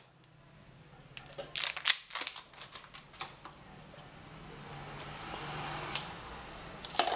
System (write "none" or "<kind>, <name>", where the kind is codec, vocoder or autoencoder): none